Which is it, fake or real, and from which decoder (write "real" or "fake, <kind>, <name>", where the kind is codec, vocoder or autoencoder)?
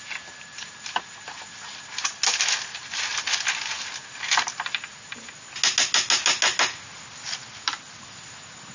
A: real